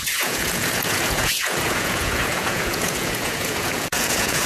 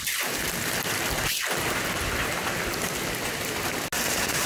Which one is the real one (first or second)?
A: second